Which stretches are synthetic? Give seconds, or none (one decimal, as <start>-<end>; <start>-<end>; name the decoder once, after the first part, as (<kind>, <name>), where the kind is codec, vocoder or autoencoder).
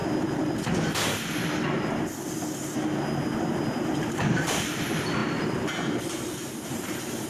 3.8-7.3 (vocoder, BigVGAN v2)